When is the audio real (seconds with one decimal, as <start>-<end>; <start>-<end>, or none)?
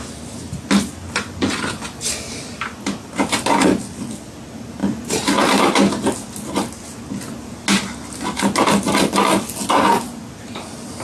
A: 0.0-1.0; 1.8-11.0